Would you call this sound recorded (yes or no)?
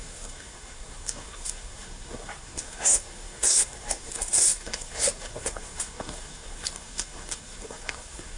no